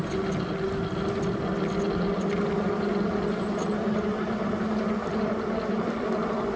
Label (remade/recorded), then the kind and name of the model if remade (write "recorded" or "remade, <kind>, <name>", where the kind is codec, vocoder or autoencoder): recorded